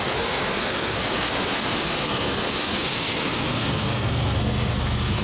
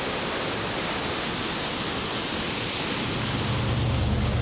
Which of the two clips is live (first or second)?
second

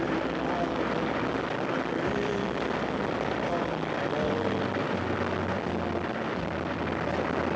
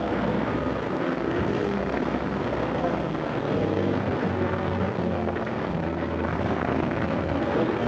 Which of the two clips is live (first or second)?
first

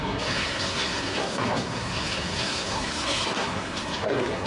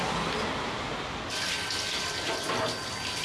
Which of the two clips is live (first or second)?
second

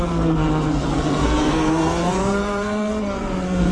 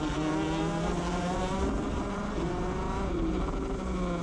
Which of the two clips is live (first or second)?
second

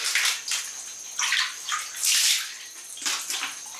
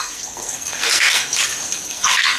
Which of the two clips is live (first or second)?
first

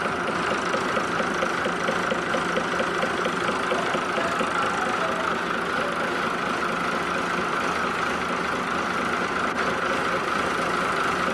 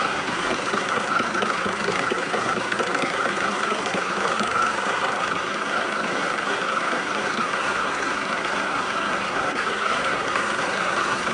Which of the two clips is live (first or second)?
first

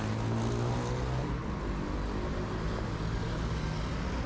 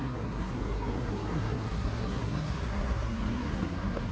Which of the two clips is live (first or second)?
first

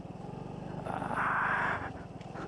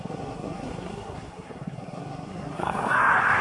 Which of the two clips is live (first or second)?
first